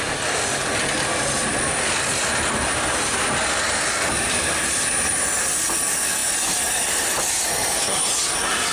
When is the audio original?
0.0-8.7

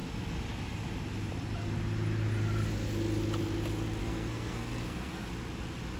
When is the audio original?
0.0-4.0; 5.3-6.0

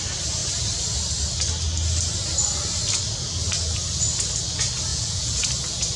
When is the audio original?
0.0-4.9; 5.5-6.0